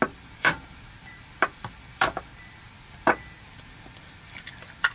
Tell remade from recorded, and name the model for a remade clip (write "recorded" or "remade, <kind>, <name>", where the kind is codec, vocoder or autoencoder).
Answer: remade, vocoder, BigVGAN v2